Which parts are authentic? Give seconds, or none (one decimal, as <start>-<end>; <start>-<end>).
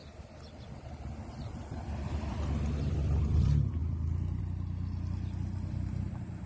2.9-3.8; 4.4-6.5